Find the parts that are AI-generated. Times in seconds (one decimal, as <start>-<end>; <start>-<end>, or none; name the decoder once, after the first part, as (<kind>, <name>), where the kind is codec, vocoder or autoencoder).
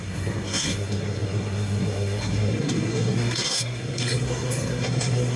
0.0-5.4 (codec, SNAC)